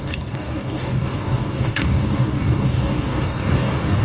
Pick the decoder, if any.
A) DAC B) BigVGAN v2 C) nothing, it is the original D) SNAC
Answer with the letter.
A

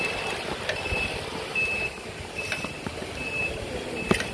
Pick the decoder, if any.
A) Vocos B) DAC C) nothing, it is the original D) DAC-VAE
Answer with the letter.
C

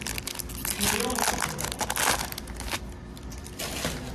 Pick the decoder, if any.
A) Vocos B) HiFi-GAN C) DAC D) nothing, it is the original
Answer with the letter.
D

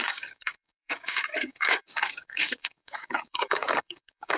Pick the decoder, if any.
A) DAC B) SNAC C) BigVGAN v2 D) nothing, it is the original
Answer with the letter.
A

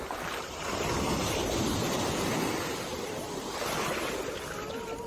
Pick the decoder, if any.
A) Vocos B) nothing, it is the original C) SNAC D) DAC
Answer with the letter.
B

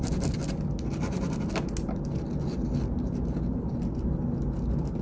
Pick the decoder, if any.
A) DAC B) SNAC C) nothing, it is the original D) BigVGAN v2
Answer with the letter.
C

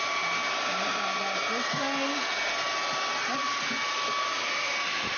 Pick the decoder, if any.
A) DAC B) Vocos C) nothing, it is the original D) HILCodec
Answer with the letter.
C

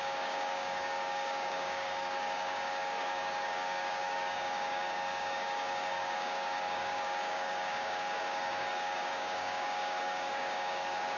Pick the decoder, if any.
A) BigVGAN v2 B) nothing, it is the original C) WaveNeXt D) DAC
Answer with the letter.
D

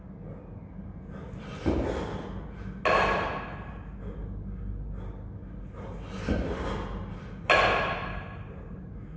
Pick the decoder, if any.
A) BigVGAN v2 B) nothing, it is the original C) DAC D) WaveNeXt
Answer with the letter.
B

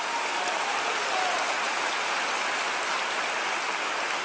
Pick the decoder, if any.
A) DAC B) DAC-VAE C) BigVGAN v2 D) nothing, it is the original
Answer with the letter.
D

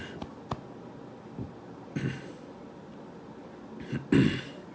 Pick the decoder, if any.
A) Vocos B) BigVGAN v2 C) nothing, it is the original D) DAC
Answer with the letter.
C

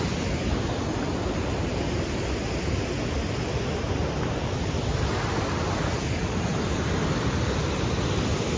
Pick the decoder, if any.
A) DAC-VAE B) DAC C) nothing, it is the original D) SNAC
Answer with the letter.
C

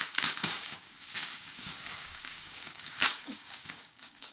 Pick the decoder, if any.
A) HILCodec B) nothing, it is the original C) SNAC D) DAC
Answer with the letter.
D